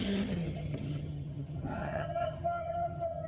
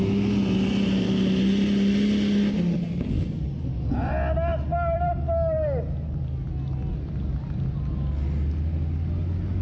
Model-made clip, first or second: first